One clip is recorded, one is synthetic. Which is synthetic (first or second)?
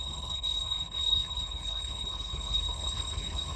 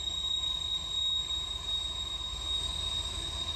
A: first